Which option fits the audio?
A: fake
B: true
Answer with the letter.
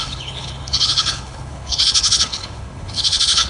A